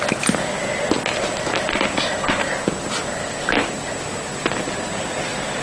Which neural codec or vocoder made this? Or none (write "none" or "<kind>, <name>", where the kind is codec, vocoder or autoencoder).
none